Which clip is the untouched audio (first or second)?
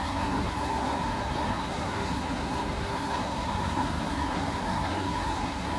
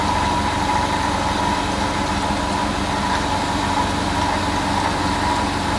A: second